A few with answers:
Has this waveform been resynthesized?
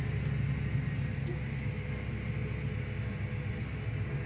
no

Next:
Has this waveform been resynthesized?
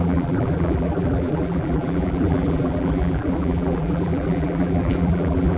yes